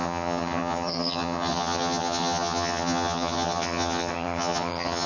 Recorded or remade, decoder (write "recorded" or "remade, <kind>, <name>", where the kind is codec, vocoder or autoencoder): remade, vocoder, HiFi-GAN